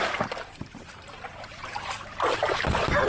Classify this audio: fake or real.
fake